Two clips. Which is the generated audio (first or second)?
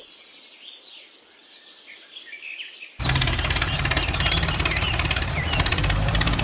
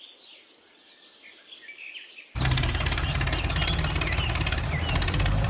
first